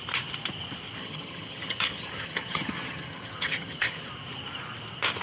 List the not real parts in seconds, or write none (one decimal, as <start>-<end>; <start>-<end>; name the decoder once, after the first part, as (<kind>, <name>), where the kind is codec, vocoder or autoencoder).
1.0-4.1 (vocoder, HiFi-GAN)